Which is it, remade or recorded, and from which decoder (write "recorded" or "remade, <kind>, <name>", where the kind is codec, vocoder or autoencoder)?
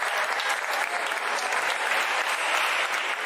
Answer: recorded